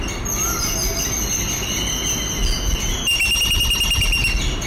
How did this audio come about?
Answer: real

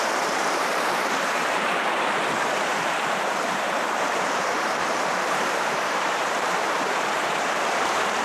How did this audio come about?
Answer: fake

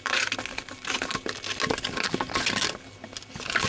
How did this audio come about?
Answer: real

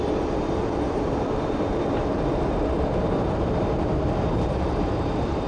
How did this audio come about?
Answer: fake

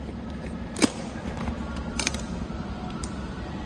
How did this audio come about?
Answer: fake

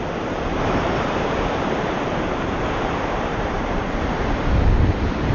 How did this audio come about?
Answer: fake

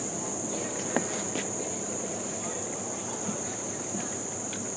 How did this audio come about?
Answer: real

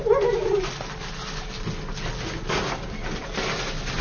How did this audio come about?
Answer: real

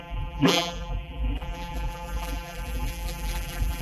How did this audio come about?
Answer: fake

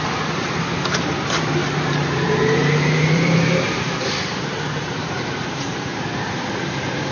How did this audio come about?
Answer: fake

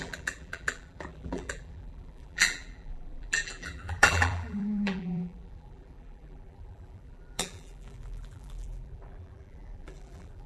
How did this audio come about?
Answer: fake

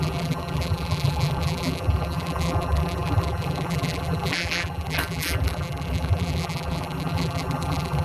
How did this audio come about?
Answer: fake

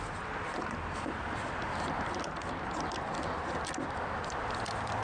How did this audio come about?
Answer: real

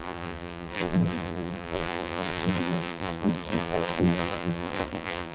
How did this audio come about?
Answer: fake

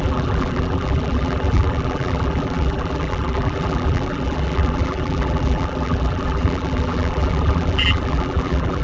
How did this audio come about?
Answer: fake